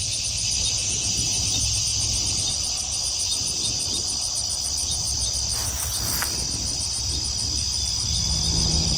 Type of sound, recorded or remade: recorded